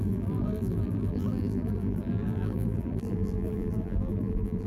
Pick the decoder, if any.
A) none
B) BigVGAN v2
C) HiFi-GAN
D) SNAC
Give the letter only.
B